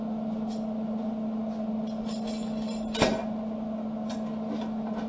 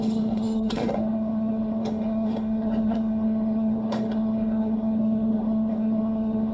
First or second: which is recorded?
first